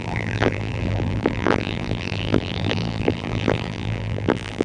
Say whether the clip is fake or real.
fake